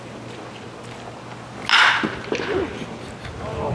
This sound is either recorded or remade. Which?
recorded